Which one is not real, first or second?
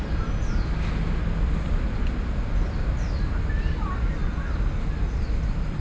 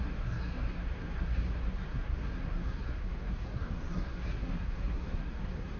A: second